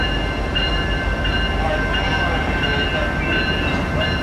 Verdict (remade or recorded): recorded